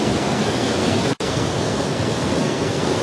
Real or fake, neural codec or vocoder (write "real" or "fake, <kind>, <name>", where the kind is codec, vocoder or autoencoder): fake, codec, SNAC